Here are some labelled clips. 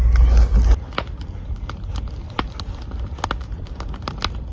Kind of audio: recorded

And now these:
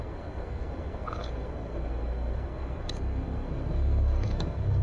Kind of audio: remade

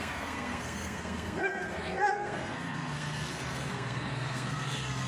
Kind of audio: remade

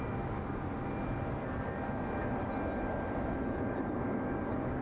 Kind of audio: recorded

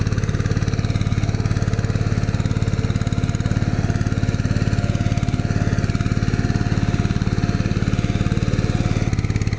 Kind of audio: recorded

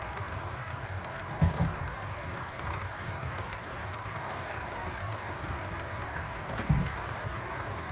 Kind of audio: remade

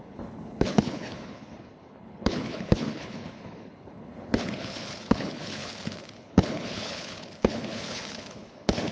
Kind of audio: remade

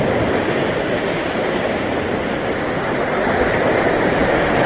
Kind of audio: recorded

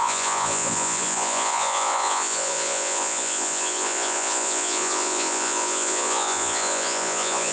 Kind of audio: remade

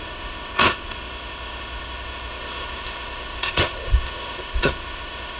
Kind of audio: remade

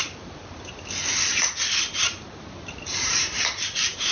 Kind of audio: recorded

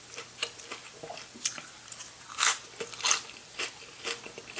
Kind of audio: remade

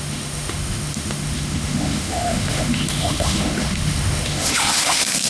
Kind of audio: remade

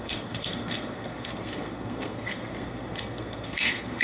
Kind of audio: remade